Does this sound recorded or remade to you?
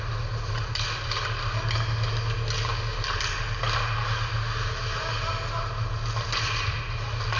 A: recorded